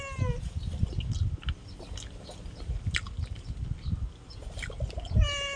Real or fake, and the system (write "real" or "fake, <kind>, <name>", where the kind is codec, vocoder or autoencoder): real